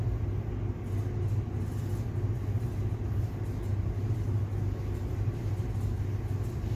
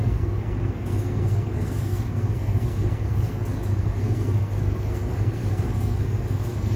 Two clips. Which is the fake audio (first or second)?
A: second